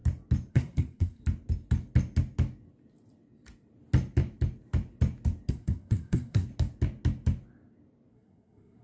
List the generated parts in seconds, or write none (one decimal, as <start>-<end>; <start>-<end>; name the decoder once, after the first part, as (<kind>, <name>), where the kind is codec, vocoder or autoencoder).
0.5-1.2 (codec, SNAC); 5.5-6.5; 8.1-8.8